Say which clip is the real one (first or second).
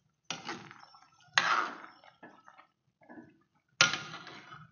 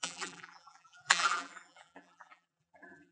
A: first